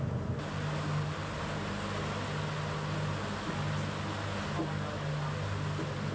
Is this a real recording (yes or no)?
yes